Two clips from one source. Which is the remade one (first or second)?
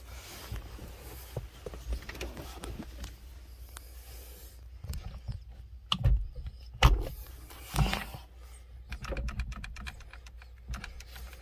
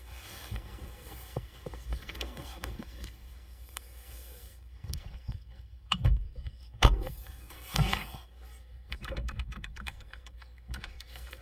second